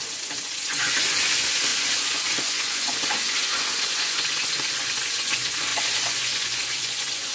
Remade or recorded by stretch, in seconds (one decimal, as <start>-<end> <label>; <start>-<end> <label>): 0.0-7.3 remade